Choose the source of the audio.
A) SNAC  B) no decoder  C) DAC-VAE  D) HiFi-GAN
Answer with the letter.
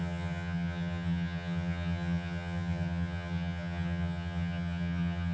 D